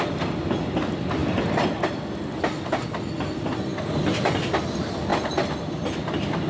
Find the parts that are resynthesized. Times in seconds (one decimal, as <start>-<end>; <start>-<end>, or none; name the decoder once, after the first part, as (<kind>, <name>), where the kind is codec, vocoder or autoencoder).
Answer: none

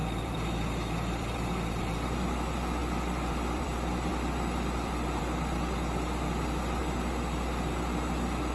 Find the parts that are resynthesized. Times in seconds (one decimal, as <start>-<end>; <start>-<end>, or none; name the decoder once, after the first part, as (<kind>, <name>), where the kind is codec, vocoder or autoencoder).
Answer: 0.0-6.8 (vocoder, BigVGAN v2)